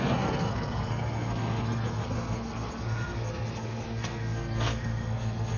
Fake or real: fake